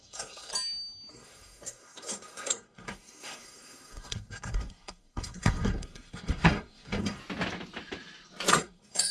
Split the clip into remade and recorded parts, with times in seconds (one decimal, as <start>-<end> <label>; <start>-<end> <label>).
0.0-0.5 remade; 0.5-1.1 recorded; 1.1-7.2 remade; 7.2-8.5 recorded; 8.5-9.1 remade